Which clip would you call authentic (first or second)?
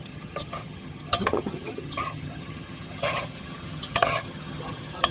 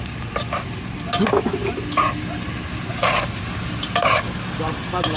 second